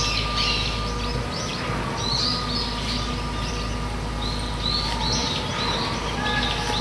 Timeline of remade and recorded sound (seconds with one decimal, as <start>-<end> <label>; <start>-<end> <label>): 0.0-6.8 recorded